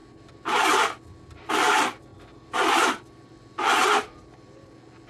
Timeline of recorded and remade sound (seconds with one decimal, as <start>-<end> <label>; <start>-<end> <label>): 0.0-5.1 recorded